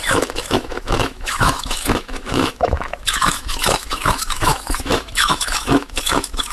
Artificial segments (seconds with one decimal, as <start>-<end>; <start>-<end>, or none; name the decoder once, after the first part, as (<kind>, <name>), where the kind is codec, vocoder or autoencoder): 0.0-6.5 (autoencoder, DAC-VAE)